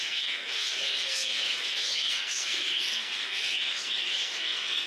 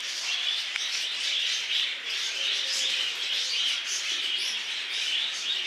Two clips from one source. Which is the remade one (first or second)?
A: first